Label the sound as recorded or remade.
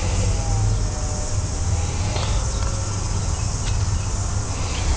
recorded